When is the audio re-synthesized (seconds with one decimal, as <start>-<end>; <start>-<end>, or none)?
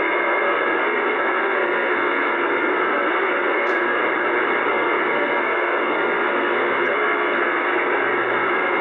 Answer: 0.0-4.0; 4.7-8.8